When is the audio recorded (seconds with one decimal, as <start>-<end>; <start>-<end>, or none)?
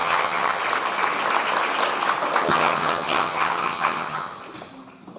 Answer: 0.6-2.4; 4.4-5.2